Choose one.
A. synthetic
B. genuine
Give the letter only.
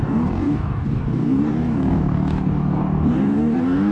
A